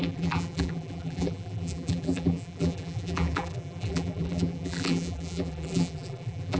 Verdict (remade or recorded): remade